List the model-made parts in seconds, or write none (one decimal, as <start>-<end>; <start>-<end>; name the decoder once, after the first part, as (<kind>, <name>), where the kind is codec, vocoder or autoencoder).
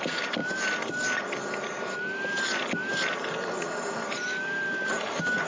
none